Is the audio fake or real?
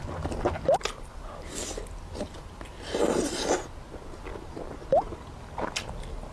real